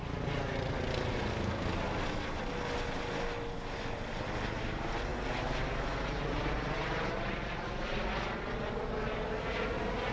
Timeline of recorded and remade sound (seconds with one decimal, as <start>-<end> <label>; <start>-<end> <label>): 0.0-10.1 recorded